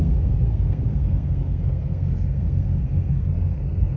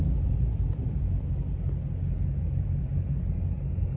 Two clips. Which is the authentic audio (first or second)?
second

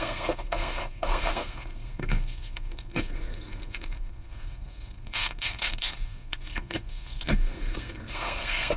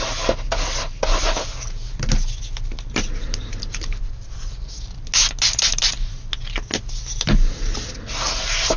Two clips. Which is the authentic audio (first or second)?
second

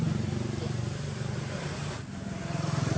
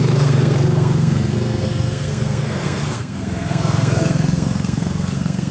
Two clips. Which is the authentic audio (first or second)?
first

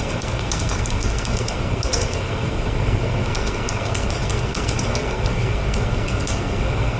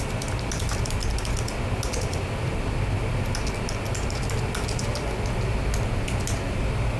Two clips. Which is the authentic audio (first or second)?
second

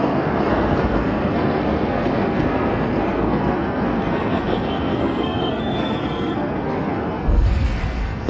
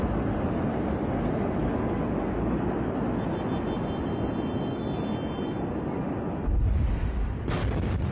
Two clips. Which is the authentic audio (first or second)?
second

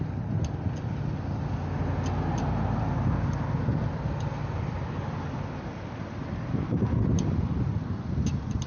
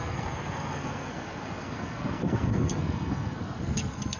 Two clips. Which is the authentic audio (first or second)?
first